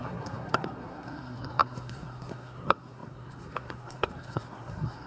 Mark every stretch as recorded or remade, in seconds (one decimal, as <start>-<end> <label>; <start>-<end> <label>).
0.0-5.1 remade